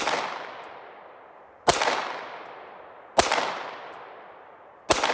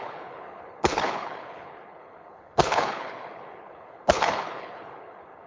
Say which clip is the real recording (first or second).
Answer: first